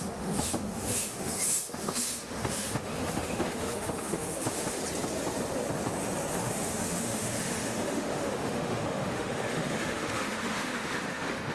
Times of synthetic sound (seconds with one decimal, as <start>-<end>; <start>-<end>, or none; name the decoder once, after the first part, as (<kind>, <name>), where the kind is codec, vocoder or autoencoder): 0.0-4.8 (autoencoder, DAC-VAE); 6.4-11.5